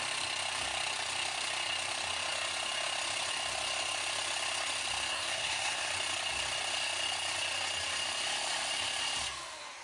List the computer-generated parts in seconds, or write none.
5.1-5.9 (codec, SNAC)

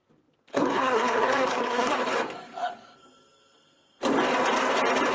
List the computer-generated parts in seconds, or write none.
0.5-2.0 (codec, SNAC)

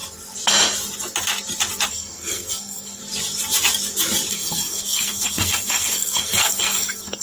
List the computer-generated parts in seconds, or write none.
1.9-3.0 (codec, SNAC); 4.3-7.2

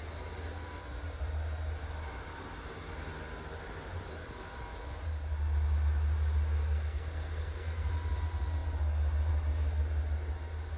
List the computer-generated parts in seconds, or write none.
6.6-7.9 (codec, SNAC)

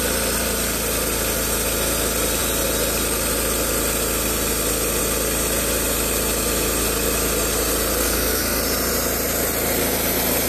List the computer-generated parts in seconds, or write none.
8.0-8.6 (codec, SNAC)

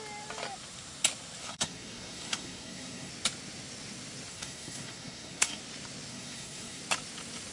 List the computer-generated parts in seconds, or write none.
1.4-3.1 (codec, SNAC); 4.3-5.6; 6.1-6.8

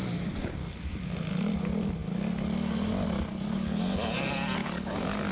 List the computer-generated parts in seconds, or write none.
none

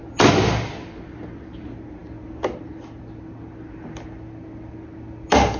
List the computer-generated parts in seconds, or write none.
none